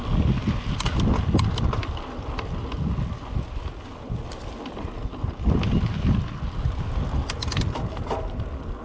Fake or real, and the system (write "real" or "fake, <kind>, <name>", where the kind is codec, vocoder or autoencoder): real